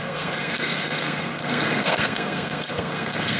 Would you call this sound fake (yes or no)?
yes